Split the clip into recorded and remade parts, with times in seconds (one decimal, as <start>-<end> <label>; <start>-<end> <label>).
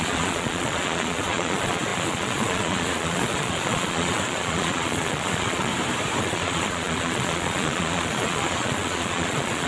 0.0-5.7 remade; 5.7-6.2 recorded; 6.2-9.7 remade